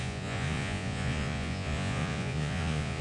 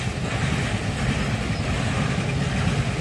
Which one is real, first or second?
second